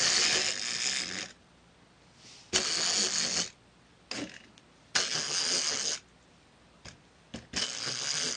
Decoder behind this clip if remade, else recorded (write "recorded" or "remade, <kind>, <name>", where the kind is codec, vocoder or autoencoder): recorded